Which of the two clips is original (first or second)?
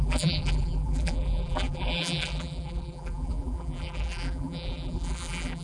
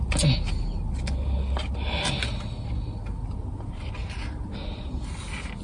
second